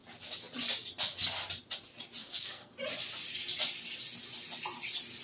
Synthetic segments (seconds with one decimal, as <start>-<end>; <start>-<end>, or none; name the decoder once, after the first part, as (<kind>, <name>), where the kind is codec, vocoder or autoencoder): 2.2-2.7 (codec, SNAC)